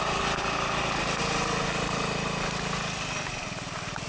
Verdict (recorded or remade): recorded